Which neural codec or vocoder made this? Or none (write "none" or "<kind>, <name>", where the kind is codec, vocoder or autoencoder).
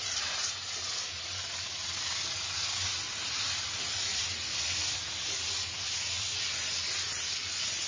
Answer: none